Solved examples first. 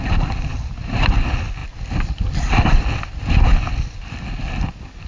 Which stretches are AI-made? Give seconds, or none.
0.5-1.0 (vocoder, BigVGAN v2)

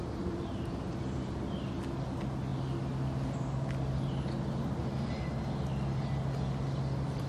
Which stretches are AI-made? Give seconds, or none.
0.0-1.4 (vocoder, BigVGAN v2)